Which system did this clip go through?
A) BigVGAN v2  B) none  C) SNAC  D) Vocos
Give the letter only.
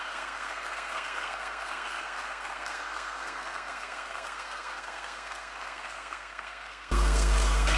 C